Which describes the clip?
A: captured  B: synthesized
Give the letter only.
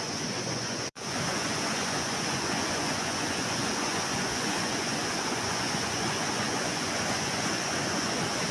B